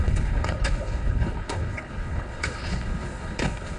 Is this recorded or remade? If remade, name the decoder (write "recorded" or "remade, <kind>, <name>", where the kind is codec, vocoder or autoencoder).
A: remade, codec, HILCodec